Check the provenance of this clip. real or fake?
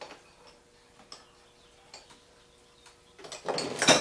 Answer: real